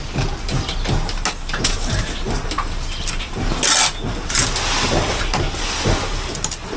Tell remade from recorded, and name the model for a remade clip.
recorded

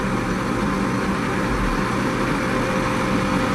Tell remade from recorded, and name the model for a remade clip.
recorded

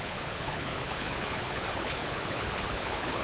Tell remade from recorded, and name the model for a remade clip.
remade, codec, HILCodec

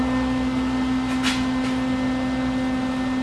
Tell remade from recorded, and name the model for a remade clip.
recorded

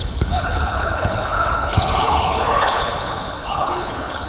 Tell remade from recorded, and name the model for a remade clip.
remade, codec, HILCodec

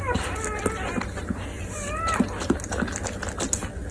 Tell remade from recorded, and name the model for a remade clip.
recorded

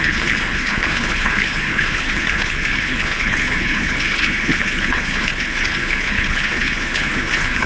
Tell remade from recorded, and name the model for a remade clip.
remade, codec, HILCodec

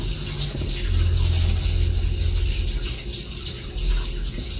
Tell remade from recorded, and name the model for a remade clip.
recorded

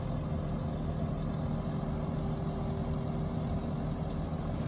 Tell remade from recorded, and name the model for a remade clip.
recorded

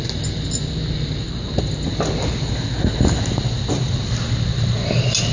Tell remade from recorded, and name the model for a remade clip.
recorded